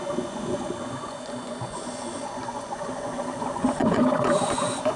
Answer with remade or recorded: remade